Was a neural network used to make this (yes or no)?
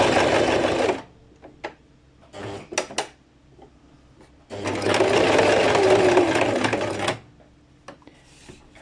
no